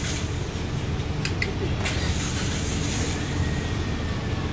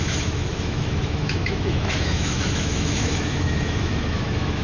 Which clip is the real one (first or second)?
first